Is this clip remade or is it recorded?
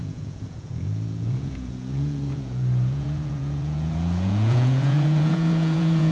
remade